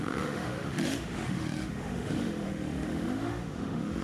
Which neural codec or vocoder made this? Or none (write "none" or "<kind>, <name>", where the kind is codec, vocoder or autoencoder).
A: autoencoder, DAC-VAE